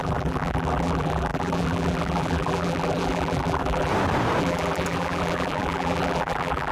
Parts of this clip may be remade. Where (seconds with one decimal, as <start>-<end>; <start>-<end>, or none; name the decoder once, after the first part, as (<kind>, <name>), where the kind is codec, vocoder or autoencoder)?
0.0-3.9 (vocoder, BigVGAN v2); 4.4-6.7